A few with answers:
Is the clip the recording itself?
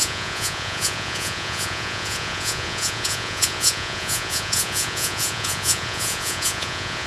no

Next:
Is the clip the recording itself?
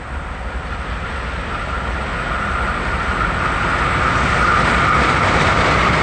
yes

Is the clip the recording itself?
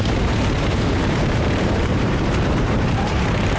no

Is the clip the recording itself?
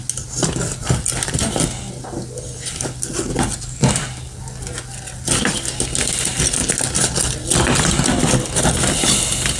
yes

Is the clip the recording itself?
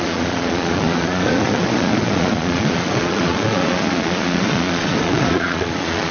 no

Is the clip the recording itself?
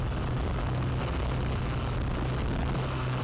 yes